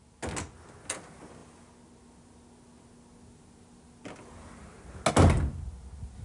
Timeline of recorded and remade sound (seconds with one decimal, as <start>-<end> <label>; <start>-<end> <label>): 0.0-6.2 recorded